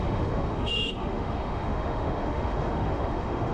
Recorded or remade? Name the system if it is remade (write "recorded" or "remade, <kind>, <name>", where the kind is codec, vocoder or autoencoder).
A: remade, autoencoder, DAC-VAE